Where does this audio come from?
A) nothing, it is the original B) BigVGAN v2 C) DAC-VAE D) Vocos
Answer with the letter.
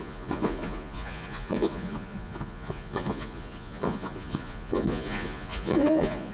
D